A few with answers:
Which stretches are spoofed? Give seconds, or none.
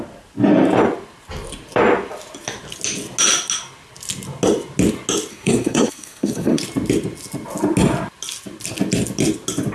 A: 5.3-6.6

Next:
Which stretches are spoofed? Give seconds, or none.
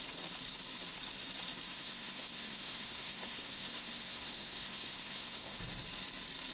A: 1.7-5.6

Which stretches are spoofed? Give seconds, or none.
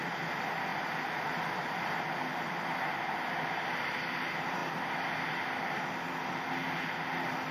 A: none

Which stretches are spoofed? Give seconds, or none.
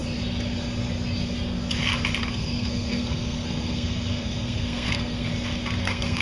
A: 2.2-5.3; 5.8-6.2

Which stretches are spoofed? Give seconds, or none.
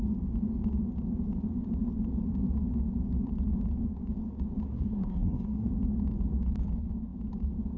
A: 4.7-5.7